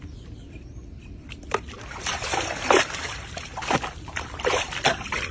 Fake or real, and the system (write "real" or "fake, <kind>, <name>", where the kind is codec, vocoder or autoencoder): fake, vocoder, BigVGAN v2